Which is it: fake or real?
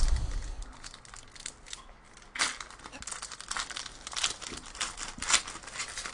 real